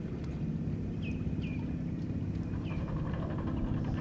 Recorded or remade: recorded